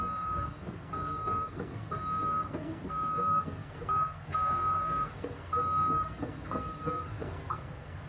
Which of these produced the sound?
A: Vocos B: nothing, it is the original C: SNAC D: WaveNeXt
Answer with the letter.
C